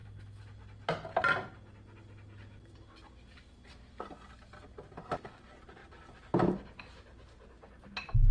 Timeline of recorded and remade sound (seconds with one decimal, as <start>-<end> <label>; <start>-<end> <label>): 0.0-8.3 recorded